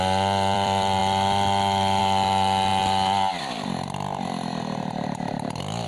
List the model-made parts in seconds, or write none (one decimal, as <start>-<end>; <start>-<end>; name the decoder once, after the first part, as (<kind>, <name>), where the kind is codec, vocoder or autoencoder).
0.0-2.7 (vocoder, BigVGAN v2); 3.4-5.9